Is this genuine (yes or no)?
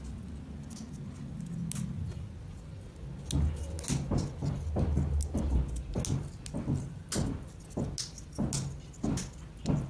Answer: yes